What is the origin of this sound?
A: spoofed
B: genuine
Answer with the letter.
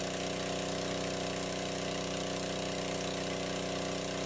B